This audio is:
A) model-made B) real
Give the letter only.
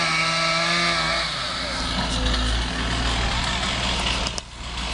B